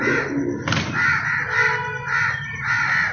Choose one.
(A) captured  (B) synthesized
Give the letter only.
A